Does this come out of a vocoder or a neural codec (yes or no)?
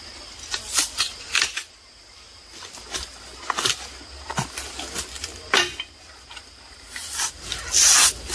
no